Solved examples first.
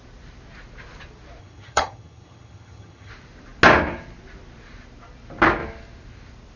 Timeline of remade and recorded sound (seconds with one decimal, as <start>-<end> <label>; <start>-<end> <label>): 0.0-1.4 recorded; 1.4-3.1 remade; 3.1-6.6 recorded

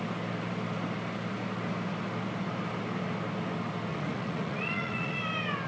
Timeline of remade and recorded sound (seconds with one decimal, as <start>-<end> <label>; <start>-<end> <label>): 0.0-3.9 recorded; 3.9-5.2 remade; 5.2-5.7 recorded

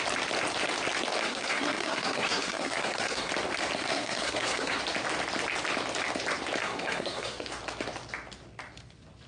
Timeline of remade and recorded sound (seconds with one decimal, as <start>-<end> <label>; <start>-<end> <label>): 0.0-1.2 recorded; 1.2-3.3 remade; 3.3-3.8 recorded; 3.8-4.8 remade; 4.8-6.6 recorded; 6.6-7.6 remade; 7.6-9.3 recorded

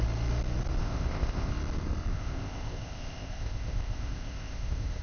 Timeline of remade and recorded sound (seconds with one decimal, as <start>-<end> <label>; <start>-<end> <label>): 0.0-0.8 recorded; 0.8-1.5 remade; 1.5-2.1 recorded; 2.1-5.0 remade

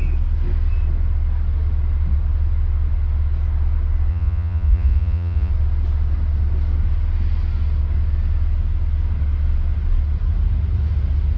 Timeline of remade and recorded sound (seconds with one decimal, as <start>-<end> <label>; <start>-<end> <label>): 0.0-4.1 recorded; 4.1-5.5 remade; 5.5-11.4 recorded

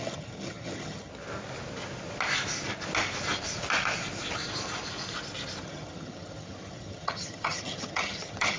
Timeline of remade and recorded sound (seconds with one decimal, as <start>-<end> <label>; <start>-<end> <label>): 0.0-1.1 remade; 1.1-5.6 recorded; 5.6-8.6 remade

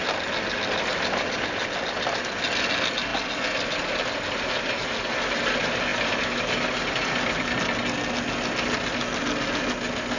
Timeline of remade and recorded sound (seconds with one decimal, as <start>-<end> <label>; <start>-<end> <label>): 0.0-10.2 recorded